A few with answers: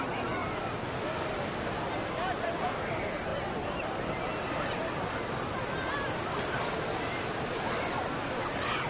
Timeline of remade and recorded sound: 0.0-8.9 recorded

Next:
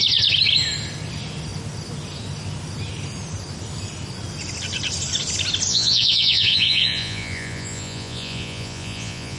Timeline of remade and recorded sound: 0.0-5.7 recorded; 5.7-9.4 remade